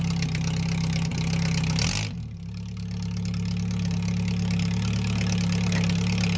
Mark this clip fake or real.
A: real